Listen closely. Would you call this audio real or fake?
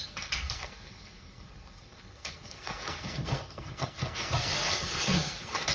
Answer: fake